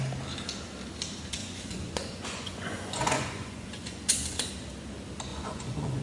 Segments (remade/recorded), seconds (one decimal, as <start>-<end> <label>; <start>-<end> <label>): 0.0-1.4 recorded; 1.4-4.5 remade; 4.5-5.3 recorded; 5.3-6.0 remade